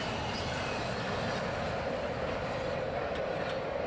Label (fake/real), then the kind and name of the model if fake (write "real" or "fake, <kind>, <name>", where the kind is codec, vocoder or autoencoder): real